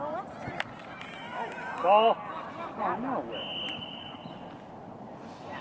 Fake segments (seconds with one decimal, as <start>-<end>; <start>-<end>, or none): none